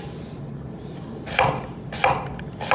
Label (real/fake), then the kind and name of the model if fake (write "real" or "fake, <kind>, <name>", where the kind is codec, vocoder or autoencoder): real